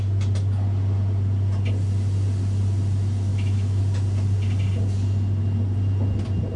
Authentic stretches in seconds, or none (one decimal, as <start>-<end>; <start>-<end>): 0.0-3.3; 3.8-6.6